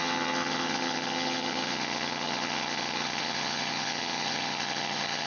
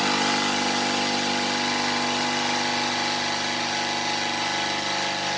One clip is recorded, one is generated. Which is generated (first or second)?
first